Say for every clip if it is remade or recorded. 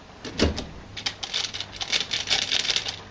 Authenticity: recorded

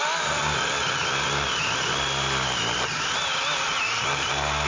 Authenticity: recorded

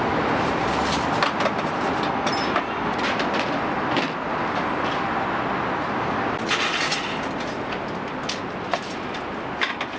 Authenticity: recorded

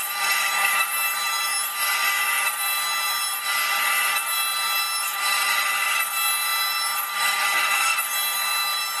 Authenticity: recorded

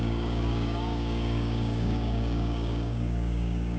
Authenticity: remade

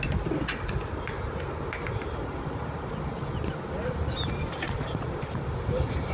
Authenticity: recorded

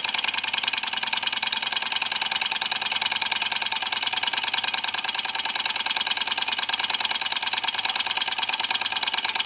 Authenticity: recorded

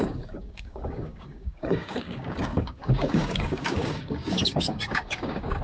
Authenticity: remade